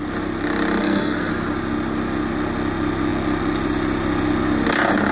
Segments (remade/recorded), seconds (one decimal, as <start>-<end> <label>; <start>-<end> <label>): 0.0-0.8 recorded; 0.8-1.3 remade; 1.3-5.1 recorded